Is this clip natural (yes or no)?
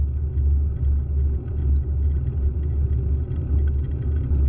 yes